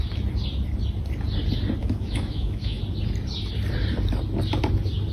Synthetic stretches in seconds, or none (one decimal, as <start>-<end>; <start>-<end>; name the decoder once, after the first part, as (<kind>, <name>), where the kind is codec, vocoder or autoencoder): 1.8-2.8 (autoencoder, DAC-VAE)

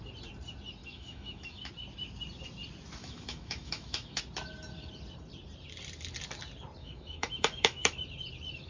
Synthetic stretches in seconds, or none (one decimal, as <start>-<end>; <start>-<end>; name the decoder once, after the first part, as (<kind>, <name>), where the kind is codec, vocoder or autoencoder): 0.8-1.7 (autoencoder, DAC-VAE); 3.0-4.2; 6.8-8.0

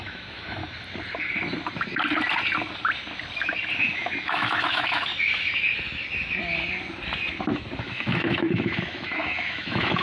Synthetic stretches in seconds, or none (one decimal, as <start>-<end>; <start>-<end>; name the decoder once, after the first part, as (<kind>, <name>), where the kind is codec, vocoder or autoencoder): 0.0-0.6 (autoencoder, DAC-VAE); 3.8-5.1; 7.8-10.0

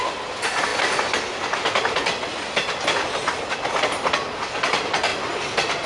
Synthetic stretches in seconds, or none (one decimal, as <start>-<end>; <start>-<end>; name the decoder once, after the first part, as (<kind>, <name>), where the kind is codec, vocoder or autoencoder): none

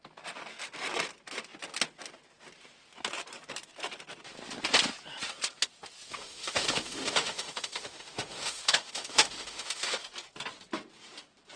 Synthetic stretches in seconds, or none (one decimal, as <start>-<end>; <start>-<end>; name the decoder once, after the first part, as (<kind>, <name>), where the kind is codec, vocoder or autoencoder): 6.1-10.0 (autoencoder, DAC-VAE)

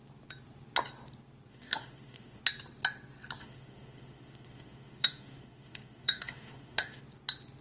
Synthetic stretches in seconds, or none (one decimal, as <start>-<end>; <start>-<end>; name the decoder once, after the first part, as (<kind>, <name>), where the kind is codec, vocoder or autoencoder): 1.5-2.4 (autoencoder, DAC-VAE); 3.4-7.0

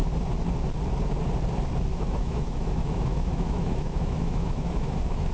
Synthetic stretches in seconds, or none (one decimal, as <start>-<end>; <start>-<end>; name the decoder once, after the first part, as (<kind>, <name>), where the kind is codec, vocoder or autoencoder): 1.9-5.3 (autoencoder, DAC-VAE)